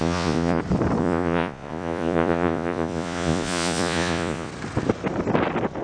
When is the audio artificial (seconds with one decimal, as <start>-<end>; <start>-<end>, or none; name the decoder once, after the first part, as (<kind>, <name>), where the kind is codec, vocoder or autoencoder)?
0.0-0.6 (vocoder, Vocos); 1.0-4.5

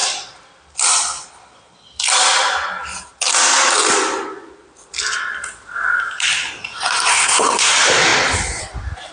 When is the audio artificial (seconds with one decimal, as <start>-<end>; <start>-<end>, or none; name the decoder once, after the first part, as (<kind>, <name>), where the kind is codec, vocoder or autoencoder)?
7.1-7.7 (codec, SNAC)

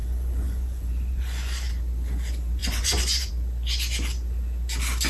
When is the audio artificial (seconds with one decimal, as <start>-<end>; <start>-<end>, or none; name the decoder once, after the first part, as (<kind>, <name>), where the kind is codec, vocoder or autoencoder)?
0.0-1.7 (vocoder, Vocos); 2.6-3.3

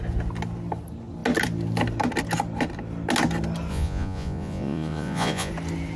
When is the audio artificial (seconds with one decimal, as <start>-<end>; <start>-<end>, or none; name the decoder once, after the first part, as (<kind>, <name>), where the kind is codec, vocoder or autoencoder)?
3.7-5.5 (vocoder, Vocos)